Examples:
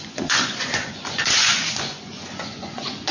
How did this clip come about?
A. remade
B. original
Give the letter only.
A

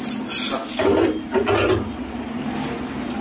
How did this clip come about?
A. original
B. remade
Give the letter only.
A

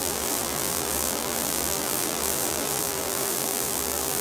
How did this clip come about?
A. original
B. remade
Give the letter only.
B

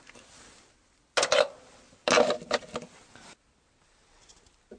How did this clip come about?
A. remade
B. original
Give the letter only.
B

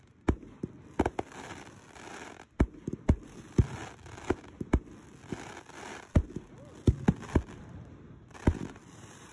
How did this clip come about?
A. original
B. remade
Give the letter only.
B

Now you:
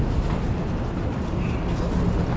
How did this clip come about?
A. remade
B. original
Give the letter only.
B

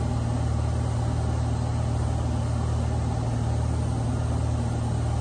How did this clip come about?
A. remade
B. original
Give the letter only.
B